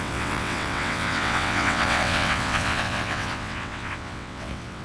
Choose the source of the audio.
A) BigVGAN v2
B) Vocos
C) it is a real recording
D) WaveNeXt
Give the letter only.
D